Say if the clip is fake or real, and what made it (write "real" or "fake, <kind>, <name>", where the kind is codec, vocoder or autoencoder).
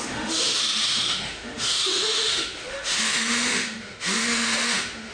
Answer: fake, autoencoder, DAC-VAE